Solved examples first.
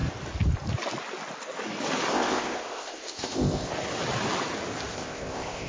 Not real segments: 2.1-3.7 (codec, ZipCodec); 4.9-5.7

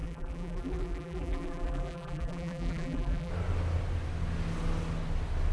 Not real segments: 0.0-3.3 (vocoder, BigVGAN v2)

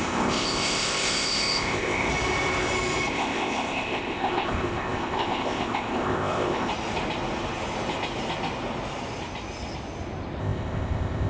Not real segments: 0.0-2.1 (codec, ZipCodec); 3.1-6.7; 10.4-11.3

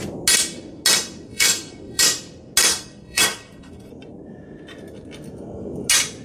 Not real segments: 1.3-2.0 (codec, SNAC); 2.7-3.9

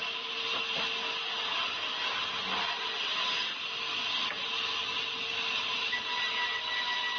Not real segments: none